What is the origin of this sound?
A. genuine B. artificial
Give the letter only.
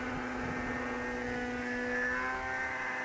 A